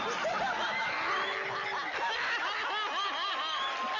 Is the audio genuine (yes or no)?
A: yes